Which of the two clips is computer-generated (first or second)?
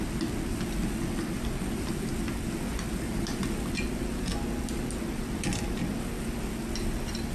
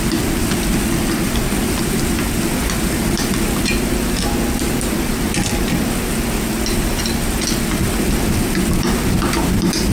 second